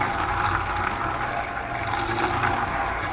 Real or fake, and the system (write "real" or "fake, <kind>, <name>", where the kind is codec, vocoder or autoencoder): real